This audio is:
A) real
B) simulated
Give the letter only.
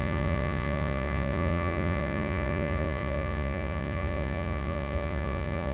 B